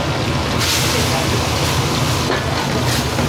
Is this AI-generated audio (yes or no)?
no